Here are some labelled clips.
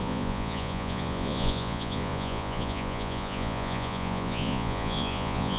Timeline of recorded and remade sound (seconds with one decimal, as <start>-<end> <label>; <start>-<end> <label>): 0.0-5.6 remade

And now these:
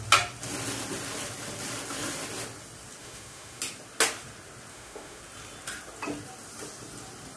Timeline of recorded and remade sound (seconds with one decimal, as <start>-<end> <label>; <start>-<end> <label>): 0.0-3.0 recorded; 3.0-3.6 remade; 3.6-4.7 recorded; 4.7-5.2 remade; 5.2-7.4 recorded

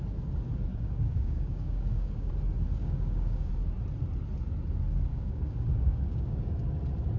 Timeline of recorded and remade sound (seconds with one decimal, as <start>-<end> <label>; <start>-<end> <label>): 0.0-0.7 recorded; 0.7-2.3 remade; 2.3-2.8 recorded; 2.8-3.5 remade; 3.5-5.1 recorded; 5.1-6.5 remade; 6.5-7.2 recorded